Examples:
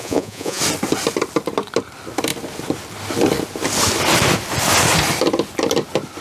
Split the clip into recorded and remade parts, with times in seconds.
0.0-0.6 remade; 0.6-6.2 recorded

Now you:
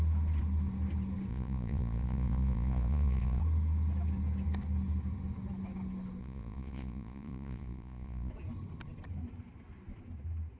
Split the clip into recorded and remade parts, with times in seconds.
0.0-1.3 recorded; 1.3-3.4 remade; 3.4-6.2 recorded; 6.2-8.3 remade; 8.3-10.6 recorded